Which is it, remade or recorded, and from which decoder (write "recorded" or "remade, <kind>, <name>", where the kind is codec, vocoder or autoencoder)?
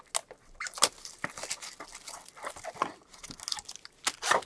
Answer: recorded